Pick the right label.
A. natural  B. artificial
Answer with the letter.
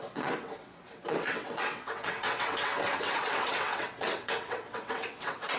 B